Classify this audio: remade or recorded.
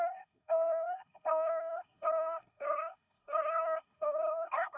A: remade